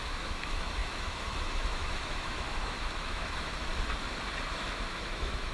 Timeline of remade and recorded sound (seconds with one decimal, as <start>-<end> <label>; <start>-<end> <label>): 0.0-3.7 remade; 3.7-4.5 recorded; 4.5-5.5 remade